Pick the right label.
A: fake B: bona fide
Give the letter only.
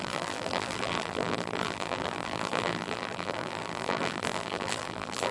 A